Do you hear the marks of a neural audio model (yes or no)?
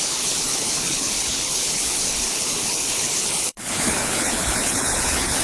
yes